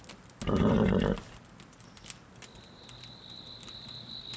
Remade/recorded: recorded